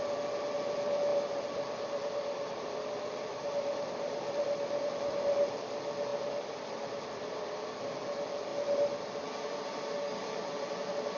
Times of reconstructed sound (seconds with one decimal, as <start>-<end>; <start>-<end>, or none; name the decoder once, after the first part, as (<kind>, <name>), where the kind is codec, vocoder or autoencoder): 1.1-4.9 (vocoder, BigVGAN v2); 6.1-7.4